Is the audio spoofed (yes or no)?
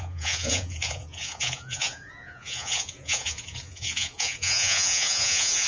yes